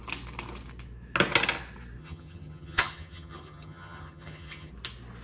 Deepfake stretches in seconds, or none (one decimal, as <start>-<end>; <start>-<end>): 2.0-4.7